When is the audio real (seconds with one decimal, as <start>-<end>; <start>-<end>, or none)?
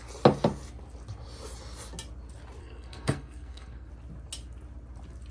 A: 0.0-2.6; 3.9-5.3